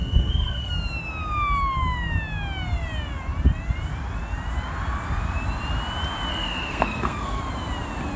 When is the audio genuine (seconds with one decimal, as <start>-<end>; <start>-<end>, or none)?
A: 0.7-6.3; 7.4-8.2